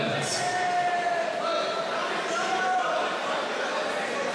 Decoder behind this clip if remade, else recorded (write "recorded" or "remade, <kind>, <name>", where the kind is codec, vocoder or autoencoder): recorded